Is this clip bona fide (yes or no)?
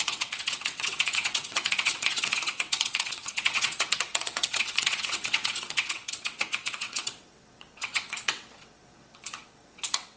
no